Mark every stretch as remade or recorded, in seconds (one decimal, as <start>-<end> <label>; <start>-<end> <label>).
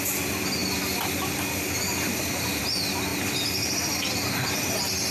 0.0-5.1 recorded